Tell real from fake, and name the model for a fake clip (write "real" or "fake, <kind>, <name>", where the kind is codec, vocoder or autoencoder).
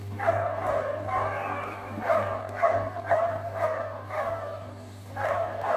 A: fake, codec, DAC